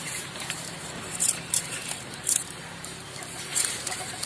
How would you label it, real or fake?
fake